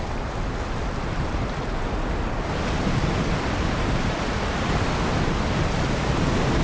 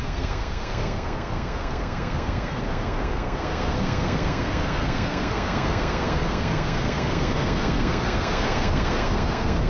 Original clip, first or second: first